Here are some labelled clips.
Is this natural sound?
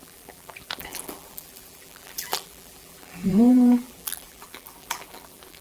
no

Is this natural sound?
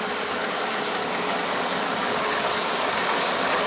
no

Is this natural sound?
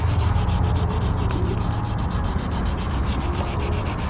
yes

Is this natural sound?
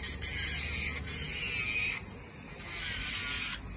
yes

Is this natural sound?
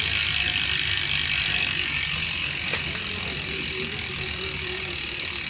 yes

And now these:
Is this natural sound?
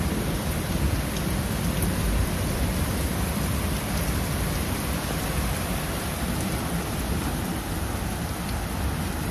no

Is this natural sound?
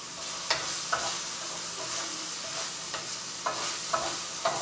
yes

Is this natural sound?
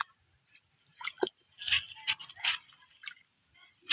yes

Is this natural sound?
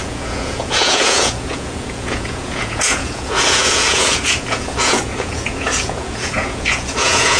no